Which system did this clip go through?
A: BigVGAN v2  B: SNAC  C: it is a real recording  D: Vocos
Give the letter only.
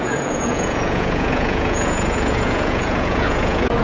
D